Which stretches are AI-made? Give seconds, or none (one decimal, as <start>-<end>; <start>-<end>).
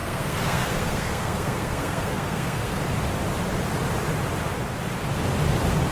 0.0-2.8